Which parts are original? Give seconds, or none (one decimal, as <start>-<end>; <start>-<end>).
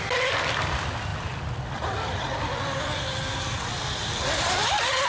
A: 0.0-5.1